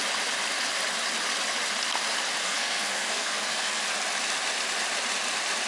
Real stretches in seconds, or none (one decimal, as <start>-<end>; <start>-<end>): 0.0-2.4; 3.8-5.7

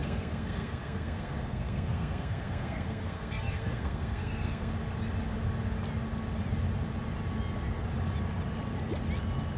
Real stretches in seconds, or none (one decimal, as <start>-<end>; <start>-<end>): 4.7-9.6

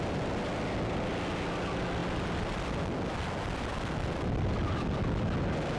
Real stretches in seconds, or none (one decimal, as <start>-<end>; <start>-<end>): 0.0-5.8

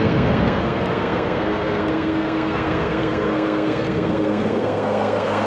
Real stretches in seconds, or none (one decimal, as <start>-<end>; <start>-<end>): none

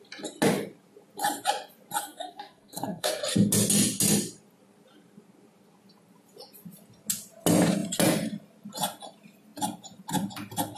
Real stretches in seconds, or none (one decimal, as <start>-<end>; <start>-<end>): 0.0-2.0; 3.2-10.8

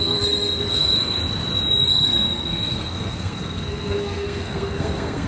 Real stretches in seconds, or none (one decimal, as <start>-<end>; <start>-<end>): 1.2-1.9